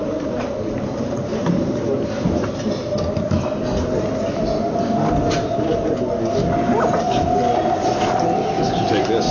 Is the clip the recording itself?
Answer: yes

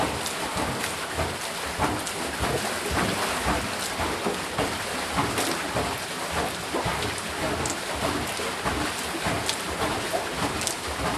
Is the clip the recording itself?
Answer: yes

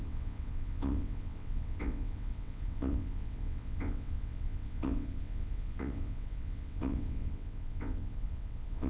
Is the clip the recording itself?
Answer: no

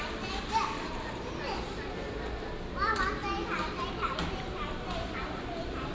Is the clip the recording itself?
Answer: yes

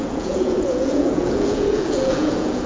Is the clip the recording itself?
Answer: no